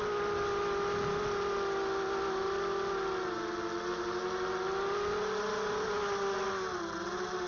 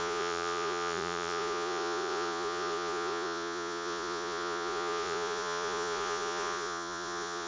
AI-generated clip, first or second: second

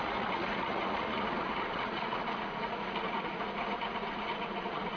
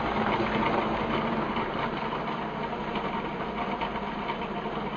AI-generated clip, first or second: first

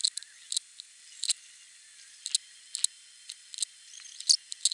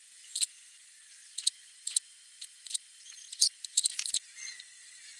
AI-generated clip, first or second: second